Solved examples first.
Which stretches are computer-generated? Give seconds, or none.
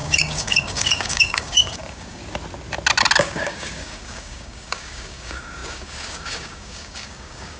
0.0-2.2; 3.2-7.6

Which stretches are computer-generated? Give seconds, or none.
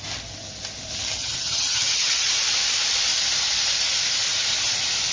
1.2-2.3